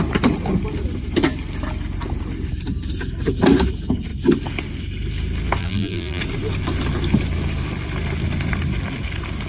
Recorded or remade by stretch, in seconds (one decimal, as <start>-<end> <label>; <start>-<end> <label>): 0.0-5.6 recorded; 5.6-6.2 remade; 6.2-9.5 recorded

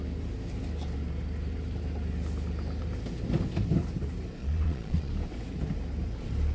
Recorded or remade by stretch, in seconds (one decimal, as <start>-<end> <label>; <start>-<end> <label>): 0.0-4.4 recorded; 4.4-5.1 remade; 5.1-6.5 recorded

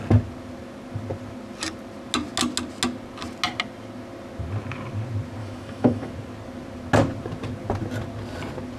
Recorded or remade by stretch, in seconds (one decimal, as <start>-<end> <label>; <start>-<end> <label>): 0.0-5.4 recorded; 5.4-6.1 remade; 6.1-8.8 recorded

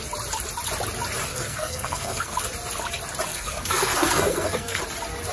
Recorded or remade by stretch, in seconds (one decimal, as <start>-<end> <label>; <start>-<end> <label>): 0.0-1.3 recorded; 1.3-2.4 remade; 2.4-3.3 recorded; 3.3-4.8 remade; 4.8-5.3 recorded

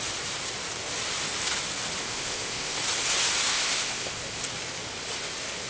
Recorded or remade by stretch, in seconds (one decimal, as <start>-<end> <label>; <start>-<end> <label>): 0.0-2.0 recorded; 2.0-2.8 remade; 2.8-3.5 recorded; 3.5-4.4 remade; 4.4-5.7 recorded